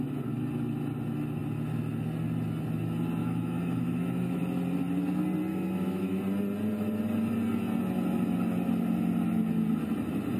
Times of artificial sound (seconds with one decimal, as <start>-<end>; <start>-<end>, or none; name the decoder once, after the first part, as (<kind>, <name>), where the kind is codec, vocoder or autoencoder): 3.2-4.4 (autoencoder, DAC-VAE); 5.5-6.2